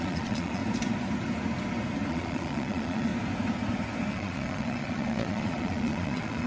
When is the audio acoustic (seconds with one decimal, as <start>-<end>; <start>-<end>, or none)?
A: 0.6-2.1; 3.1-4.1